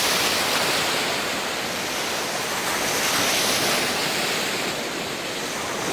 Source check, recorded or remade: recorded